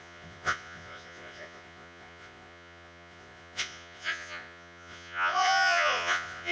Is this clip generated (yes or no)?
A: yes